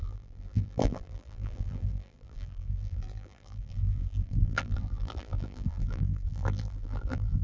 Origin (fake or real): fake